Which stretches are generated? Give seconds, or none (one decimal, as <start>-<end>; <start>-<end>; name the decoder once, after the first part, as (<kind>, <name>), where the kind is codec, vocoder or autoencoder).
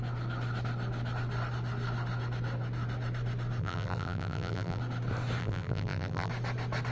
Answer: 3.6-4.8 (vocoder, BigVGAN v2); 5.4-6.3